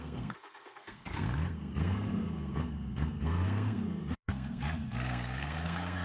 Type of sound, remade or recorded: remade